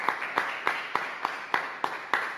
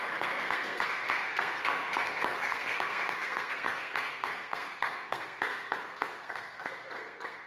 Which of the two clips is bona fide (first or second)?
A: first